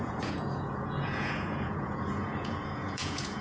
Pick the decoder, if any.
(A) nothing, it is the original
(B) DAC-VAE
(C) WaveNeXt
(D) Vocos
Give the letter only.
D